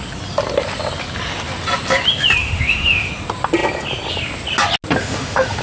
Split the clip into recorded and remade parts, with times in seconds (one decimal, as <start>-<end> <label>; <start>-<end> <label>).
0.0-2.4 recorded; 2.4-3.1 remade; 3.1-5.0 recorded; 5.0-5.6 remade